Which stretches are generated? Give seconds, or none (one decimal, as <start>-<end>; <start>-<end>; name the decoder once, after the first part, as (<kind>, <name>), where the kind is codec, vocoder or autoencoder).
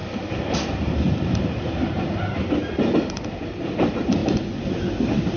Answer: 0.0-2.4 (vocoder, BigVGAN v2); 4.2-4.8